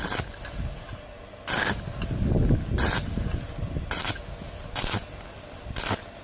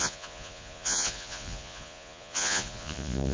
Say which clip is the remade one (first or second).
second